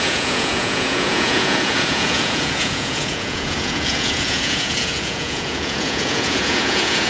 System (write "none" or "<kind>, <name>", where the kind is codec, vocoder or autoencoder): vocoder, Vocos